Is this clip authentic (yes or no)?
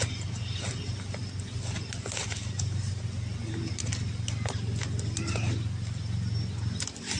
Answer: yes